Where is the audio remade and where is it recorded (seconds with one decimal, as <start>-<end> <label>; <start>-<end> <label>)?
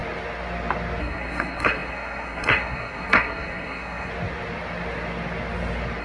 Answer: 0.0-1.0 recorded; 1.0-4.1 remade; 4.1-6.0 recorded